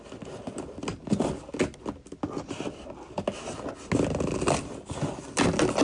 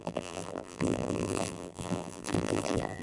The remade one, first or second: second